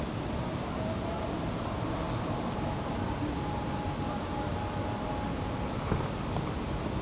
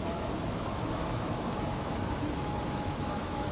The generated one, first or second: second